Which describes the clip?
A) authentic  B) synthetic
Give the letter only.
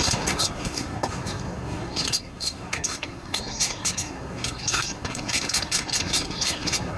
B